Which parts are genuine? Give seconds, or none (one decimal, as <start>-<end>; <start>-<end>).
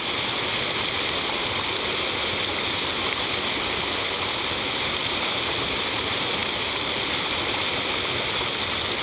0.0-9.0